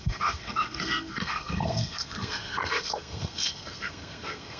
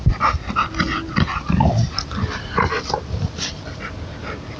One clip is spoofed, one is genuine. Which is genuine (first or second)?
second